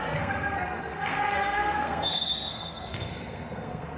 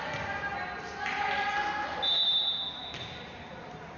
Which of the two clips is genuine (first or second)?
second